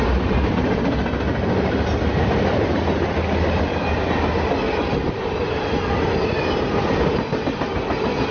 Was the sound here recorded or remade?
recorded